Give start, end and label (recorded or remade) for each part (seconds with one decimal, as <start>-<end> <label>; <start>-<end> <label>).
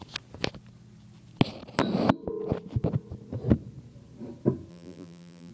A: 0.0-4.7 recorded; 4.7-5.5 remade